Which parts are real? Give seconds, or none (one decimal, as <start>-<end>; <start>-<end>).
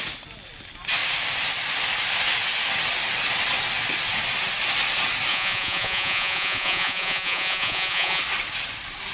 0.0-5.3; 8.2-9.1